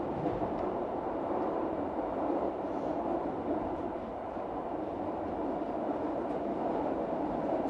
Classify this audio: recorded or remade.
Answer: remade